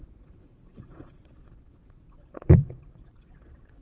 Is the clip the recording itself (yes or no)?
no